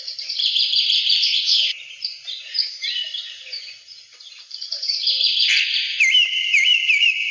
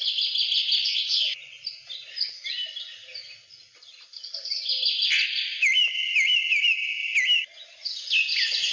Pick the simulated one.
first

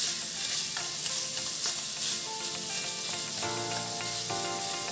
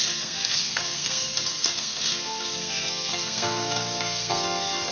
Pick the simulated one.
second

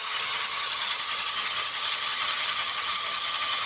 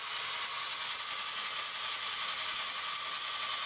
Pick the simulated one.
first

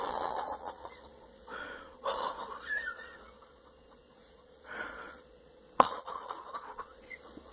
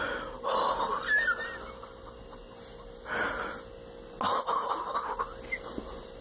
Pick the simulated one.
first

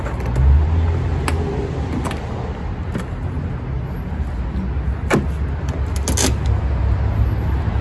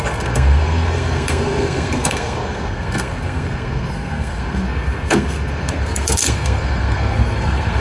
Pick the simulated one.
second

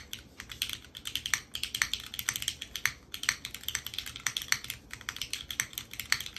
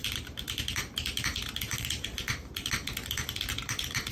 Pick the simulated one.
second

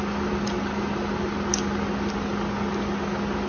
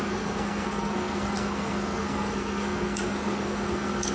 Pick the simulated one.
second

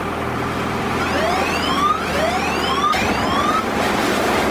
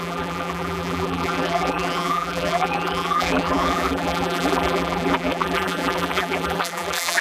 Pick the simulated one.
second